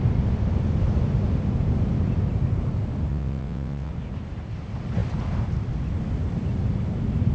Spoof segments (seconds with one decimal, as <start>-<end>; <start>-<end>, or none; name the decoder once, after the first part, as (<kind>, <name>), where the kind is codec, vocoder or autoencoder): 3.1-3.9 (vocoder, WaveNeXt)